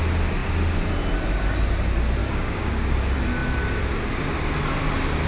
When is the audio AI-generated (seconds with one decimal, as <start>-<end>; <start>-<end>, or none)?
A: 2.2-2.7